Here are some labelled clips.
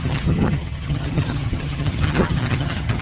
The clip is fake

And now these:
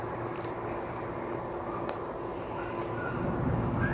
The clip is real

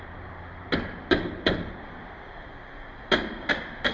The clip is real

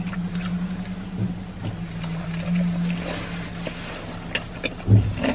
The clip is real